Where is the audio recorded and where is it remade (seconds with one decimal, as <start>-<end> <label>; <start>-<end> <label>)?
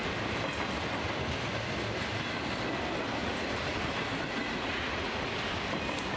0.0-3.2 recorded; 3.2-3.8 remade; 3.8-4.4 recorded; 4.4-5.3 remade; 5.3-6.2 recorded